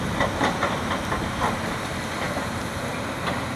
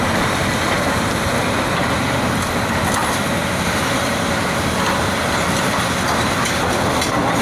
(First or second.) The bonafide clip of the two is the first